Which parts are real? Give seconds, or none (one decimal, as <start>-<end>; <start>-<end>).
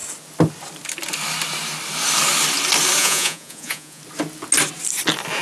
0.0-3.0; 4.0-5.4